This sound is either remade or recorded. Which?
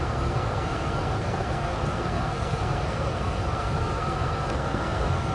remade